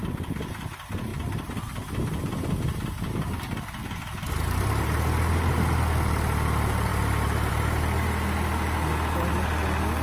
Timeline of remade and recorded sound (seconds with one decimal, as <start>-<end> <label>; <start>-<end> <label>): 0.0-10.0 recorded